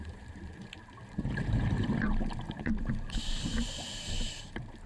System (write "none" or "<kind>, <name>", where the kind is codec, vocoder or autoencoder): vocoder, BigVGAN v2